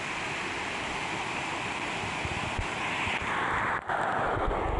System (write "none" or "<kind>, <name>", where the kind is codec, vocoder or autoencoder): none